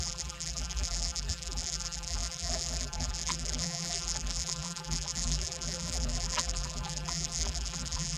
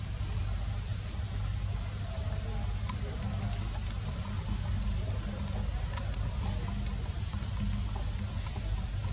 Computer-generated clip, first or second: first